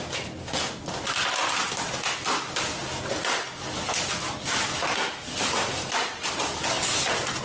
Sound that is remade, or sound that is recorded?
recorded